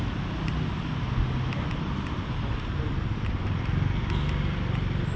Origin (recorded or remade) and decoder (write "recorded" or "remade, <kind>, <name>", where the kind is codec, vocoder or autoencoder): recorded